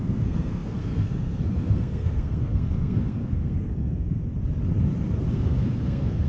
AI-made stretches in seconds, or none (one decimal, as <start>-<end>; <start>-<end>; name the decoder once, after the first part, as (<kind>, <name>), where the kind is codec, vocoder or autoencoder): 0.0-4.2 (codec, SNAC); 5.3-6.3